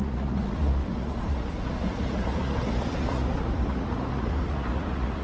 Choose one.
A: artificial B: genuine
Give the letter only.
A